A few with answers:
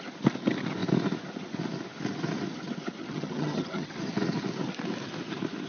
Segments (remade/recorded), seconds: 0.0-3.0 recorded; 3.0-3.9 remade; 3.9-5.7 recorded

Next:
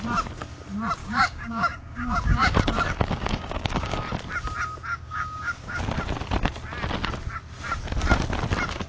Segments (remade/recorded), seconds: 0.0-1.0 recorded; 1.0-4.0 remade; 4.0-4.9 recorded; 4.9-5.8 remade; 5.8-8.9 recorded

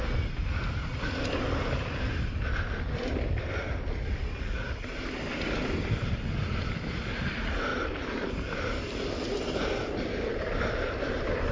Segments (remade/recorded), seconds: 0.0-11.5 recorded

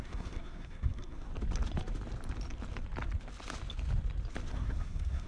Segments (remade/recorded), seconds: 0.0-1.3 remade; 1.3-4.5 recorded; 4.5-5.3 remade

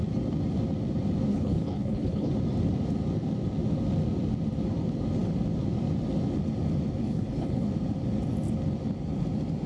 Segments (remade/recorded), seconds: 0.0-1.3 recorded; 1.3-2.3 remade; 2.3-7.0 recorded; 7.0-7.7 remade; 7.7-9.7 recorded

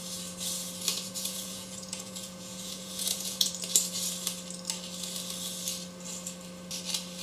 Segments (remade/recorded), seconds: 0.0-0.9 recorded; 0.9-3.5 remade; 3.5-7.2 recorded

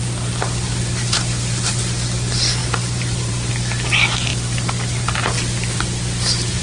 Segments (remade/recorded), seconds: 0.0-2.6 recorded; 2.6-3.5 remade; 3.5-6.6 recorded

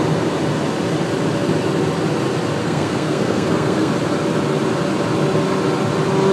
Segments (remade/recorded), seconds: 0.0-2.6 recorded; 2.6-3.9 remade; 3.9-6.3 recorded